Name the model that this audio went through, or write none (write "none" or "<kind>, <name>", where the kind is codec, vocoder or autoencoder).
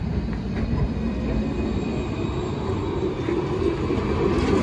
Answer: none